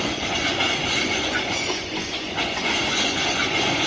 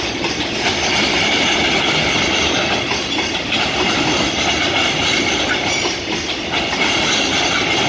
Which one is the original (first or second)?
second